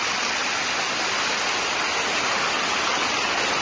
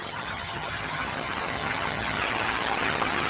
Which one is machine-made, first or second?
second